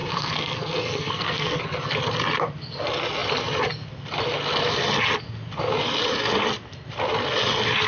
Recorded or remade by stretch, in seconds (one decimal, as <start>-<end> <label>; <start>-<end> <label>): 0.0-1.6 remade; 1.6-7.9 recorded